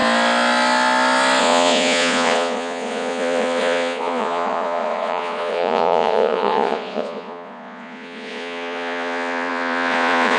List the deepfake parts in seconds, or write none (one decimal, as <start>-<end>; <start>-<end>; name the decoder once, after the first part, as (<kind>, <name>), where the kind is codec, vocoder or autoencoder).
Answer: 1.4-10.4 (vocoder, Vocos)